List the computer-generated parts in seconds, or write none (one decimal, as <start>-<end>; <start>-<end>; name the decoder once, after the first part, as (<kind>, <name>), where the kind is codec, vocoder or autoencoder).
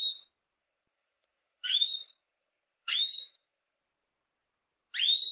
0.6-3.8 (codec, DAC)